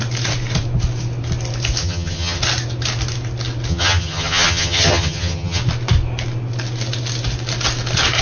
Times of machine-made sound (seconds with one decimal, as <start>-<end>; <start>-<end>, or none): 1.8-2.4; 3.7-5.6